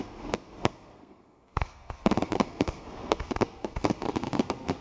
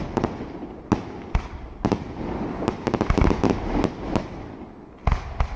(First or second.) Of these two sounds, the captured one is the second